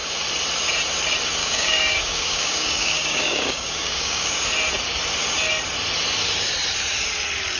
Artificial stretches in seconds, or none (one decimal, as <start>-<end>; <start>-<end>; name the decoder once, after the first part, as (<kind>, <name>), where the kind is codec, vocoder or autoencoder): 1.4-4.4 (codec, DAC)